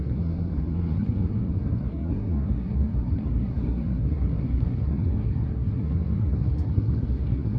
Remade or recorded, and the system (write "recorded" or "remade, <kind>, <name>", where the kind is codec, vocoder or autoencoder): remade, codec, SNAC